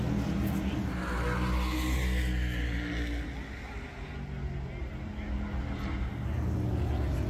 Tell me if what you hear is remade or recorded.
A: recorded